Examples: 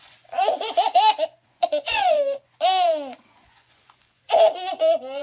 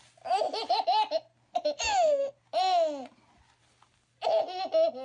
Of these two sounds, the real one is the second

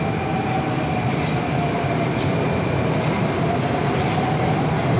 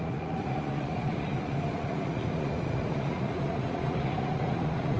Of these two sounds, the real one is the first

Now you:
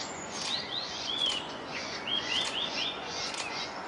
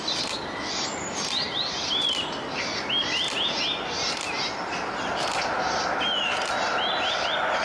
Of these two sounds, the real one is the second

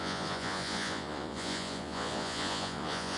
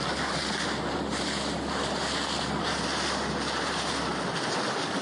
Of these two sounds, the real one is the second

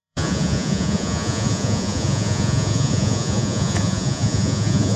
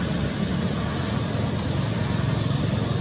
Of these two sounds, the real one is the second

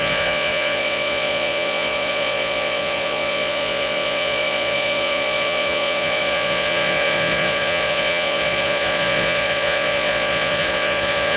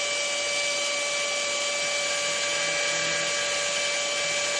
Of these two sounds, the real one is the second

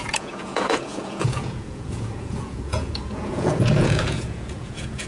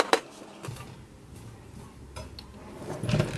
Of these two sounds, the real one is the second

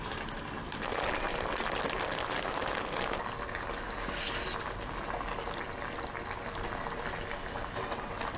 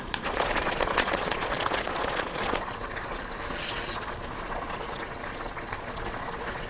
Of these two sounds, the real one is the first